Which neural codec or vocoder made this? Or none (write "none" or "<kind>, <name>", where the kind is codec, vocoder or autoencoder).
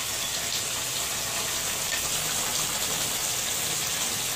none